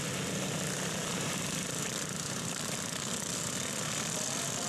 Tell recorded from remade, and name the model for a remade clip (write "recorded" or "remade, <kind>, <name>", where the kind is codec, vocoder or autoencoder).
recorded